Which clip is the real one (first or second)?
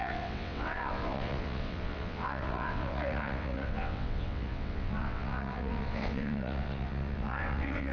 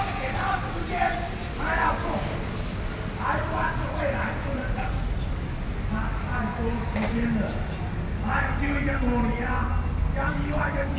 second